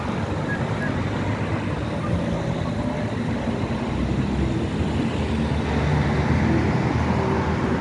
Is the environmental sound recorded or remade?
recorded